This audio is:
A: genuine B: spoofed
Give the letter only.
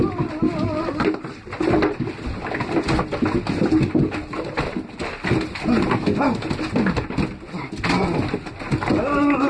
A